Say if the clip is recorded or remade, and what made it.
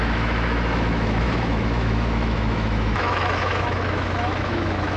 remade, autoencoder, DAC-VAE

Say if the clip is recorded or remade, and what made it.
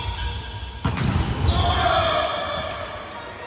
recorded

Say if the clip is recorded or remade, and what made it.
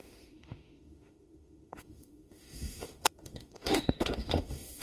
remade, autoencoder, DAC-VAE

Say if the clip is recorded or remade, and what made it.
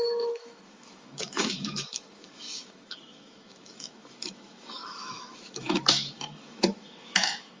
remade, autoencoder, DAC-VAE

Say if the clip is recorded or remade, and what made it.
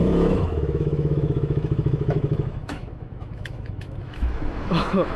remade, autoencoder, DAC-VAE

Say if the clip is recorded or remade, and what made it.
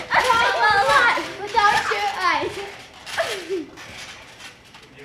recorded